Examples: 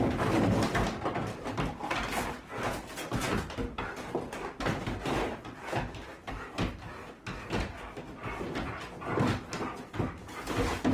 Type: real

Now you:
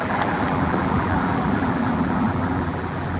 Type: fake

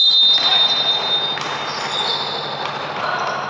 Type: real